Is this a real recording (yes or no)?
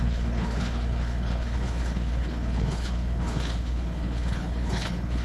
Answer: no